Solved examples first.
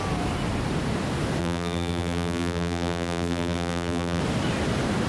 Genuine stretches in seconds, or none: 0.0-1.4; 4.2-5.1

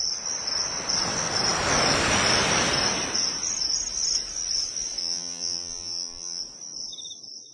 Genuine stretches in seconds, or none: 0.0-5.0; 6.4-7.5

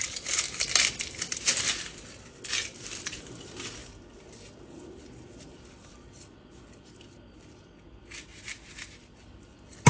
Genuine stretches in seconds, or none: 0.0-2.7; 3.2-3.8; 7.5-9.9

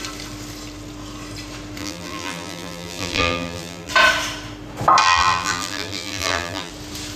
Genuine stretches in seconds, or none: 0.0-1.8; 3.9-5.0; 6.7-7.2

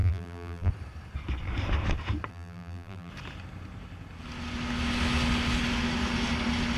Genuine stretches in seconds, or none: 0.7-2.3; 3.1-6.8

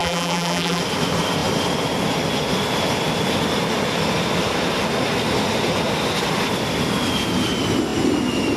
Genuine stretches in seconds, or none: 0.8-8.6

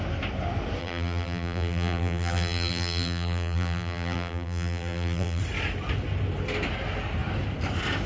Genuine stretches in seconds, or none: 0.0-0.8; 5.4-8.1